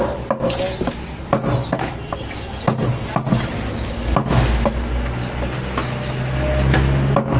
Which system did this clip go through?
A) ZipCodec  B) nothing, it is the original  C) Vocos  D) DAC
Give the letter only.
B